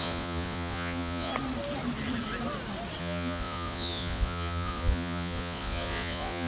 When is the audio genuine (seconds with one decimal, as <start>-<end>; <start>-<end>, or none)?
1.3-3.0